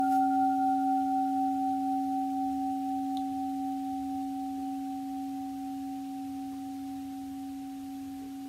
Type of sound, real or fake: real